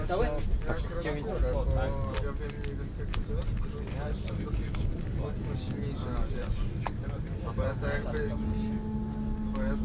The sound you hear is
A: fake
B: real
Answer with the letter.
B